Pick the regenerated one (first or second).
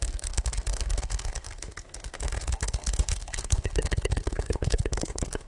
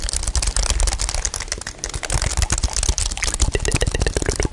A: first